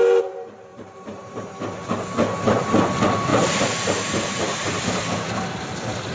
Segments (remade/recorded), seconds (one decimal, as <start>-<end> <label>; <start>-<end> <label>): 0.0-0.7 recorded; 0.7-1.6 remade; 1.6-3.3 recorded; 3.3-4.8 remade; 4.8-6.1 recorded